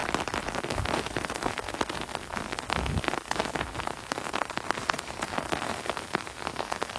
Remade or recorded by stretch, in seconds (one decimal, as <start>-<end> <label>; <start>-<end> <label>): 0.0-0.5 recorded; 0.5-7.0 remade